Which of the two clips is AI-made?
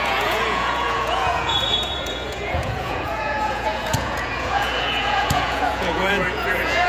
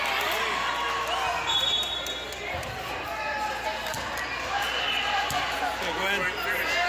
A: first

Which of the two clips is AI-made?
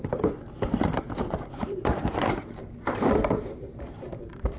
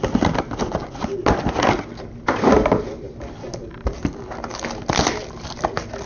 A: first